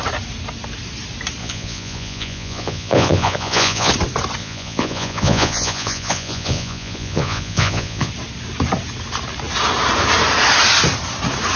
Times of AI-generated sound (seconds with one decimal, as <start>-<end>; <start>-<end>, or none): 1.4-3.9; 4.4-8.1